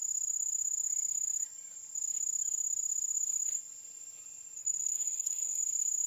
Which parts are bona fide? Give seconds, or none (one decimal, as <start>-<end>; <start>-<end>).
0.0-4.6; 5.6-6.1